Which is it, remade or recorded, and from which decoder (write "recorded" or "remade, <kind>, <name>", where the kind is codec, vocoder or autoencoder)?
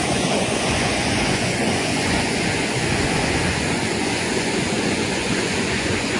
remade, vocoder, Vocos